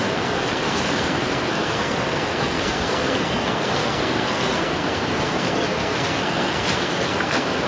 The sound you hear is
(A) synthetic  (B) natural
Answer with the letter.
A